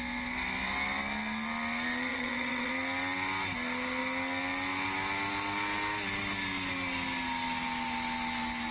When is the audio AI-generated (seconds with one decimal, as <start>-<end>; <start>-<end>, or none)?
2.1-2.7